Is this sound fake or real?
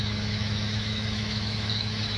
fake